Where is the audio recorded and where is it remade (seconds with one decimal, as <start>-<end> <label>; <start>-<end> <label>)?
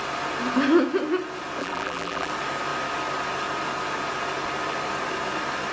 0.0-1.6 recorded; 1.6-2.3 remade; 2.3-5.7 recorded